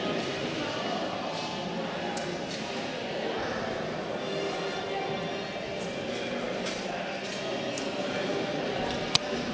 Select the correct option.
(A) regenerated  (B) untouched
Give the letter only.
B